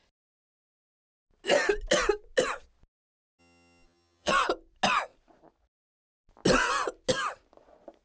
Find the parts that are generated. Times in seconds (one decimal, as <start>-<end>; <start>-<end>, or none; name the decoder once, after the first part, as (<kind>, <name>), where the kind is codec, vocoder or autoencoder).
3.4-4.3 (vocoder, HiFi-GAN)